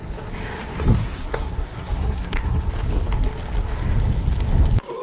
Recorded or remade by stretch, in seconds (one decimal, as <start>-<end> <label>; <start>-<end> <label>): 0.0-0.9 recorded; 0.9-2.7 remade; 2.7-5.0 recorded